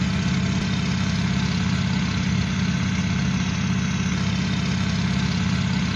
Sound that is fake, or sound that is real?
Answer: real